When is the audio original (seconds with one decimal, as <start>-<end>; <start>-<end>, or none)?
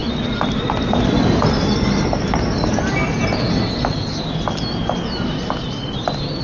0.0-6.4